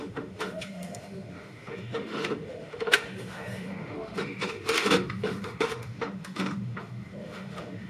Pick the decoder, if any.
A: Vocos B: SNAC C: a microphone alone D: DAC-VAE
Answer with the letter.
D